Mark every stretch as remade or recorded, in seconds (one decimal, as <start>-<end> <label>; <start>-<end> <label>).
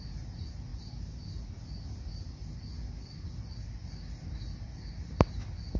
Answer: 0.0-5.8 recorded